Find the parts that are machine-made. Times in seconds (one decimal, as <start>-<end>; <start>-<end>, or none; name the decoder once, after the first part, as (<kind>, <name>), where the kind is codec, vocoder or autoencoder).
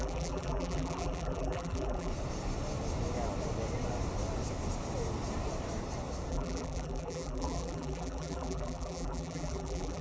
0.0-2.1 (vocoder, BigVGAN v2); 6.3-10.0